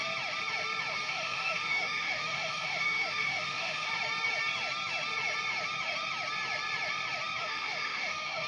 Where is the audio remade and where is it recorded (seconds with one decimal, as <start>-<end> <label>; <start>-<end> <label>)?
0.0-0.9 recorded; 0.9-3.9 remade; 3.9-7.4 recorded; 7.4-8.5 remade